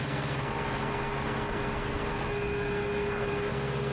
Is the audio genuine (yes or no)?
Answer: no